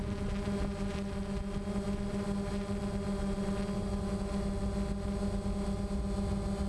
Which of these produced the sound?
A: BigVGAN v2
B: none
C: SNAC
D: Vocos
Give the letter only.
B